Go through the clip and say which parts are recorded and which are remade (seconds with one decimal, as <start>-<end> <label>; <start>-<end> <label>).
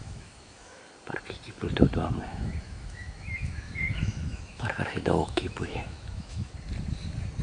0.0-0.8 remade; 0.8-2.3 recorded; 2.3-6.5 remade; 6.5-7.4 recorded